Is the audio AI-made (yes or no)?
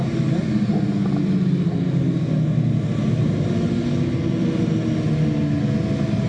no